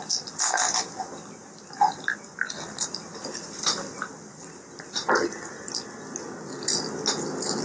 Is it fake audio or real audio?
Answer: real